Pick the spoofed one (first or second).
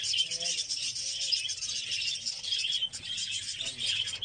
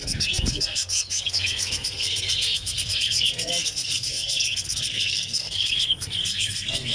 second